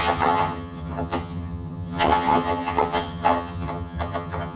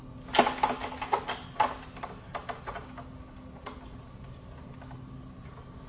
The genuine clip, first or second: second